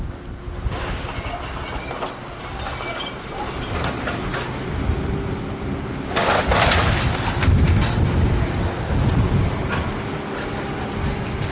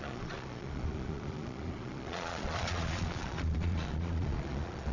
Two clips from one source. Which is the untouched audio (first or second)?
first